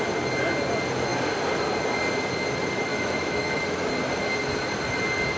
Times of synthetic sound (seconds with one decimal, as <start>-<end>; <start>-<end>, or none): 2.9-3.9